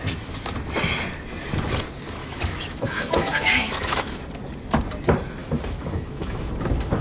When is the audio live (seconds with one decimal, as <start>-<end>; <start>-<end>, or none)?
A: 0.0-2.2; 4.1-5.4; 6.5-7.0